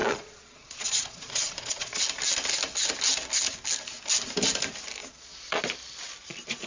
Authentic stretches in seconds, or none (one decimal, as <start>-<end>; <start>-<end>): 2.0-5.0; 5.6-6.7